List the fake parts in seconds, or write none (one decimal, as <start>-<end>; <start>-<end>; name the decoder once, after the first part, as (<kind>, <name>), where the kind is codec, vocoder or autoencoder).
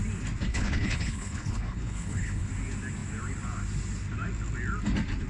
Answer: 0.5-2.5 (codec, HILCodec)